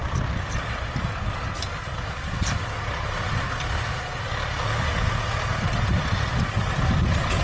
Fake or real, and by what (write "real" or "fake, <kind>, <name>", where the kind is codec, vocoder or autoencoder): real